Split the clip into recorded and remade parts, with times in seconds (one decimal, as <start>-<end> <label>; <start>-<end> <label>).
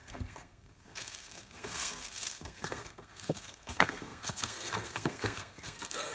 0.0-6.1 remade